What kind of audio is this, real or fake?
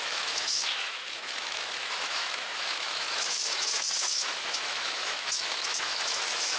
fake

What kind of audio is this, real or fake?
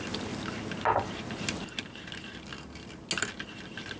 real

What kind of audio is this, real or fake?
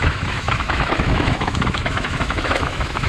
fake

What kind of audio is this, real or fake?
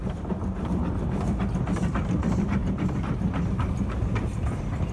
real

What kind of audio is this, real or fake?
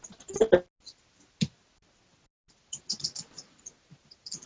real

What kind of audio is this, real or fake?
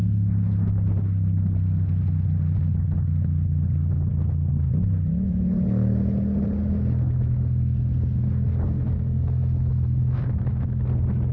real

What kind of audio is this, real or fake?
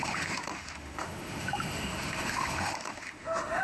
fake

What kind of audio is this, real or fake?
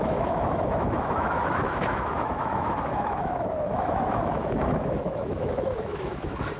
fake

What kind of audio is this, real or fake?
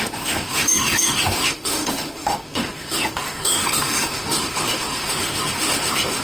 fake